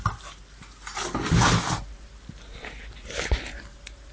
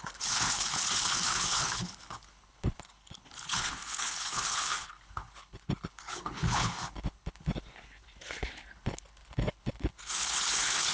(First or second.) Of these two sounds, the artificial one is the second